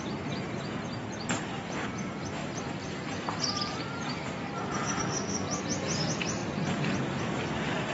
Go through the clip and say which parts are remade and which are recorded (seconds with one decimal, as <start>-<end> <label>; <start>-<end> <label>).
0.0-7.9 recorded